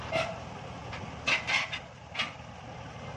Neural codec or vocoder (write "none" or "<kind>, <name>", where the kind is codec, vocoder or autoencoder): none